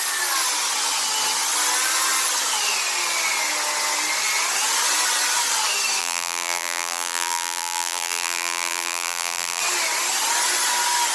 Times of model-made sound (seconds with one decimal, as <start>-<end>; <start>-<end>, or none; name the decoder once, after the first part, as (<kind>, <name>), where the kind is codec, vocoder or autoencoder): 6.0-9.6 (vocoder, BigVGAN v2)